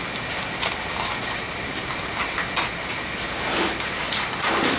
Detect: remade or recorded recorded